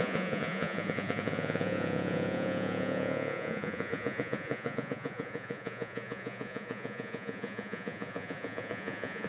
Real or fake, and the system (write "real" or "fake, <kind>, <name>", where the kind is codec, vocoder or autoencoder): fake, vocoder, Vocos